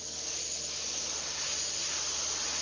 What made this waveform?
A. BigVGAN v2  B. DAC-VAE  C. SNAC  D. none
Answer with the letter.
D